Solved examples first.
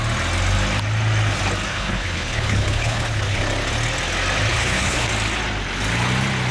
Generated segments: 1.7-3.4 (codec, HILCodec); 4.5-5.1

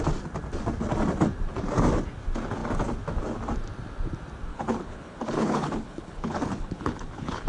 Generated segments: 4.5-7.5 (codec, HILCodec)

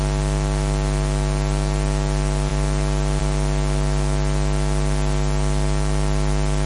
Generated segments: none

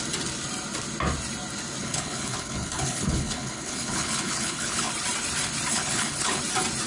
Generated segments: 1.8-4.9 (codec, HILCodec); 5.7-6.4

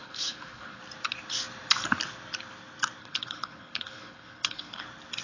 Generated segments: 0.0-0.8 (codec, HILCodec); 3.0-4.8

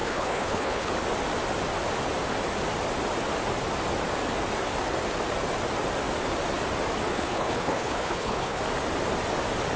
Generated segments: 0.0-0.9 (codec, HILCodec); 7.1-8.6